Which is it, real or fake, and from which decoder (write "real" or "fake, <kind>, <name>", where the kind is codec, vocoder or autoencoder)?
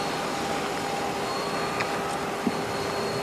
real